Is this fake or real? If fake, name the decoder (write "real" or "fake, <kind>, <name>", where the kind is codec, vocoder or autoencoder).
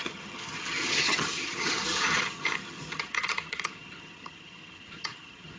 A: fake, vocoder, HiFi-GAN